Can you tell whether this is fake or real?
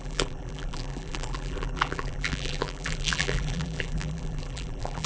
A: fake